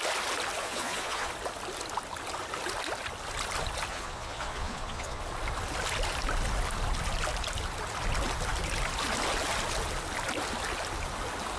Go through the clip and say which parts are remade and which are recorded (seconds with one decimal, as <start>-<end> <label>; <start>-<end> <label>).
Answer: 0.0-0.6 recorded; 0.6-1.3 remade; 1.3-3.9 recorded; 3.9-5.2 remade; 5.2-11.6 recorded